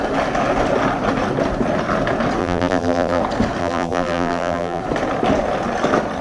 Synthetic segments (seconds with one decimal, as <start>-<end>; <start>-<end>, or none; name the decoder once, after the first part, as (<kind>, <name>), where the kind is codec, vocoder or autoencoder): 2.4-3.2 (vocoder, BigVGAN v2); 3.6-4.8